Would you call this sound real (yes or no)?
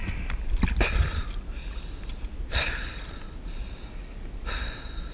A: yes